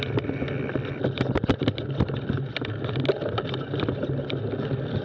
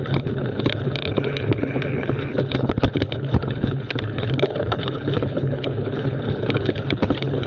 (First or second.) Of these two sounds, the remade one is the second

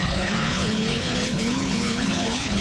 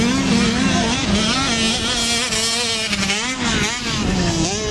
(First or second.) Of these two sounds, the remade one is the first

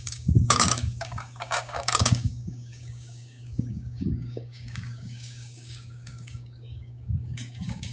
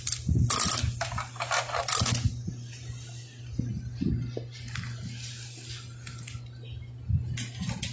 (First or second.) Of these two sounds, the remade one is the first